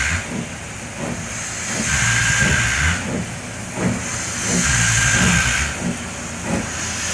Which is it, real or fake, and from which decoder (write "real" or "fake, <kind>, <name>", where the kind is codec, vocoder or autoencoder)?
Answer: real